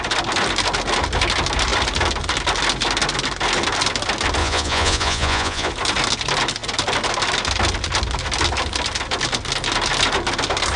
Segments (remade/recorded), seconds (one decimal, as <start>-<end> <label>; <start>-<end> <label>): 0.0-4.4 recorded; 4.4-5.7 remade; 5.7-10.8 recorded